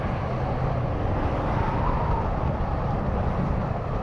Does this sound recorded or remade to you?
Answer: recorded